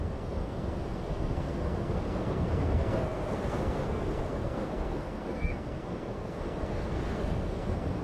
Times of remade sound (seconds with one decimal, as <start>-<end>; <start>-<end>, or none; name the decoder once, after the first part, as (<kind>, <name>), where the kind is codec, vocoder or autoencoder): 0.0-8.0 (codec, SNAC)